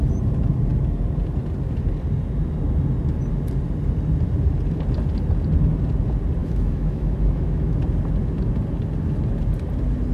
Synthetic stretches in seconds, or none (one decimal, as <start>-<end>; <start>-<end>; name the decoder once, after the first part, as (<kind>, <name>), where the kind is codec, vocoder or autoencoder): 6.4-7.8 (autoencoder, DAC-VAE)